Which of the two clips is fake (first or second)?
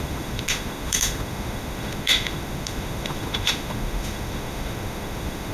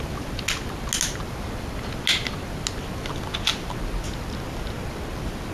first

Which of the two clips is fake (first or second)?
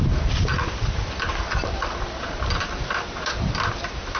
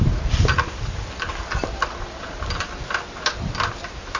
first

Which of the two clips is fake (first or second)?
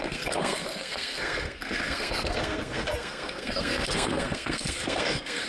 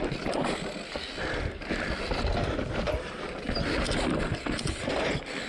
first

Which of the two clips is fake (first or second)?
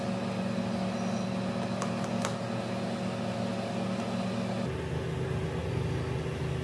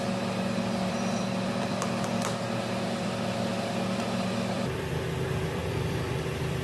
second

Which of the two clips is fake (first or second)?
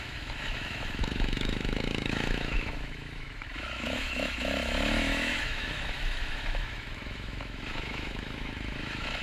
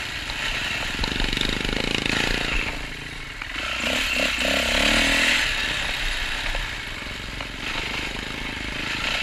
first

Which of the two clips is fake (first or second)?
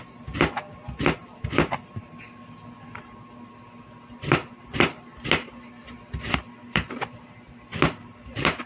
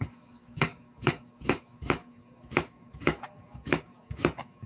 second